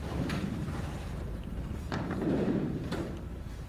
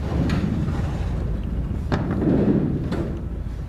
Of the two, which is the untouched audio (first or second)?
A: second